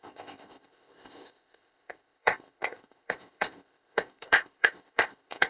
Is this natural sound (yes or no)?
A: no